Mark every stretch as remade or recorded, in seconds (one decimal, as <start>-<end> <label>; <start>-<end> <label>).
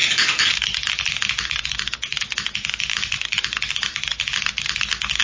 0.0-5.2 recorded